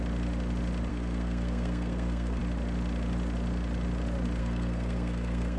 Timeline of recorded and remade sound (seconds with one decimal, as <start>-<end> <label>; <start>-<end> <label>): 0.0-0.9 recorded; 0.9-2.4 remade; 2.4-4.4 recorded; 4.4-5.6 remade